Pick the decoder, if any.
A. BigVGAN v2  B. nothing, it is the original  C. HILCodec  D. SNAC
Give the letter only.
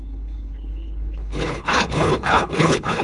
C